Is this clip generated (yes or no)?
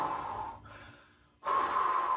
no